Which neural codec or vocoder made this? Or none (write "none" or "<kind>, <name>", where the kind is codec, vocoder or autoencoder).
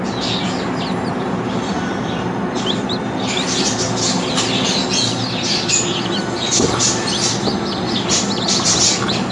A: none